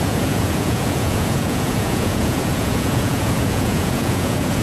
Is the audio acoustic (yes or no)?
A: no